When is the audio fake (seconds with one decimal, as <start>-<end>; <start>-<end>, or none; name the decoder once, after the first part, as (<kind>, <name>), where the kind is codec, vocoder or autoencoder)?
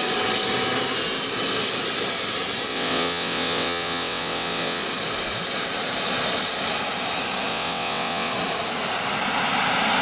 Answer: 2.7-4.8 (vocoder, WaveNeXt); 7.5-8.3